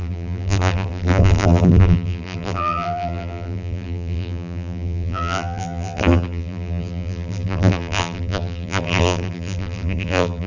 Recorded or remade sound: remade